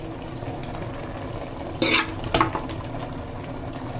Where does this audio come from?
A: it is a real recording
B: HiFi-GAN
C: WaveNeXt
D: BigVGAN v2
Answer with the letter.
A